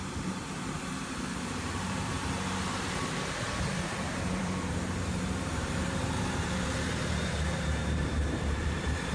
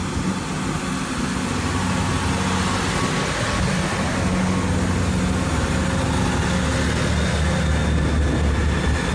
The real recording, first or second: second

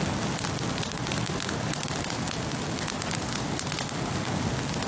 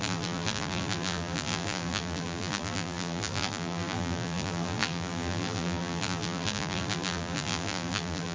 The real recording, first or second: first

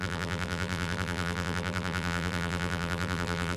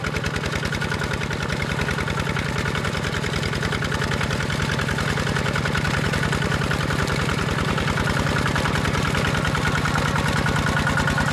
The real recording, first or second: second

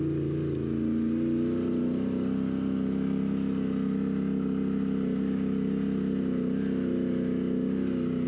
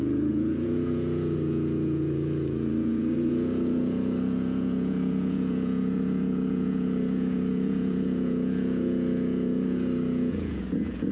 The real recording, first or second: first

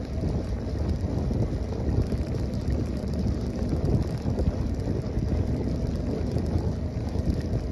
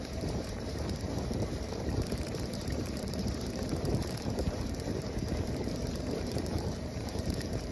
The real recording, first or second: first